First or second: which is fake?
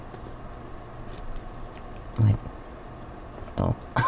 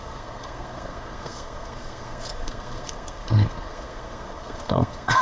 second